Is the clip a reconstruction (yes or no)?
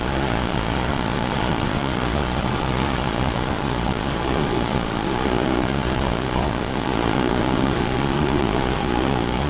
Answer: yes